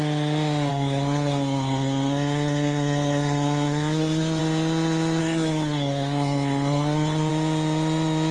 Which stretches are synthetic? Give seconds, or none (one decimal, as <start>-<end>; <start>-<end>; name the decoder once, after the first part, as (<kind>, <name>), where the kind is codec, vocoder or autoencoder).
0.7-4.4 (codec, SNAC); 5.2-7.3